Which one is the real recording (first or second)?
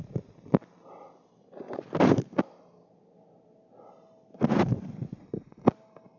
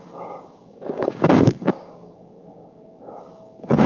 first